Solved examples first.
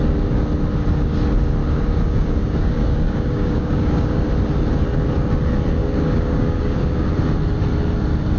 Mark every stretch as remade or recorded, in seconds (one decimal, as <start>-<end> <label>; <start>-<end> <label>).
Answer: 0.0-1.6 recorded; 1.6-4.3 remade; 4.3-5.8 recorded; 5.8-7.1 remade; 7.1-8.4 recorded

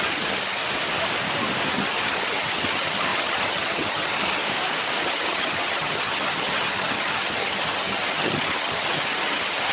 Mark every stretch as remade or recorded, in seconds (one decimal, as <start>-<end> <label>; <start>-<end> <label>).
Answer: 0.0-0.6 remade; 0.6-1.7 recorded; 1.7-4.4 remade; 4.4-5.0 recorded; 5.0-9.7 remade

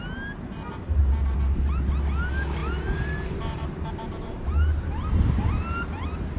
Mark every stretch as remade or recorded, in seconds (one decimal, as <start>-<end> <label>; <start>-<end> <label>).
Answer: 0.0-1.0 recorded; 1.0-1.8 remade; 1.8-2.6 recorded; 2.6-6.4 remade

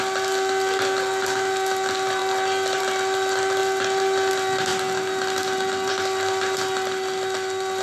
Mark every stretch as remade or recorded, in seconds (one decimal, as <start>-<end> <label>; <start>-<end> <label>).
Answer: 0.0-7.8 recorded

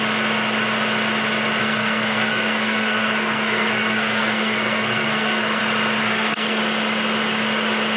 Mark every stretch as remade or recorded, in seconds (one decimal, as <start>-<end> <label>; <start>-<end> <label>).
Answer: 0.0-1.6 recorded; 1.6-5.6 remade; 5.6-6.0 recorded; 6.0-6.6 remade; 6.6-8.0 recorded

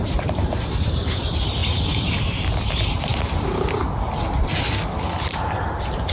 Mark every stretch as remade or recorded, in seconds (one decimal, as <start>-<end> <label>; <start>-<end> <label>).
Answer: 0.0-3.1 remade; 3.1-5.6 recorded; 5.6-6.1 remade

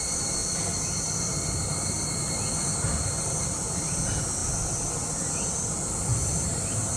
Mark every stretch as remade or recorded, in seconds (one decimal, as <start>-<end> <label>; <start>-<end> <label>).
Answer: 0.0-7.0 recorded